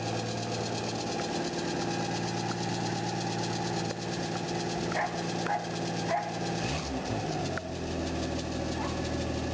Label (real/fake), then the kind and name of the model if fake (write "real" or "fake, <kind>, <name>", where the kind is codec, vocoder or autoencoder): real